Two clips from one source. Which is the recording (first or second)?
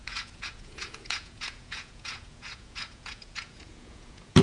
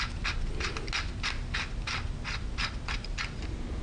second